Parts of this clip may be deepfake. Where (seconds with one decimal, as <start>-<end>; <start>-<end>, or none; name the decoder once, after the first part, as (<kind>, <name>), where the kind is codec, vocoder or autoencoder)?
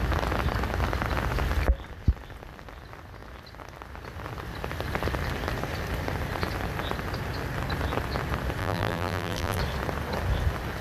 8.6-9.6 (vocoder, BigVGAN v2)